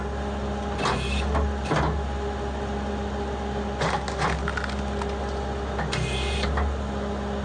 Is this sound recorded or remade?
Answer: recorded